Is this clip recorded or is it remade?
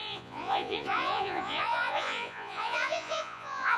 remade